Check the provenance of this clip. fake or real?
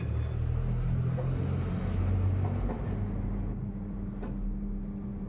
real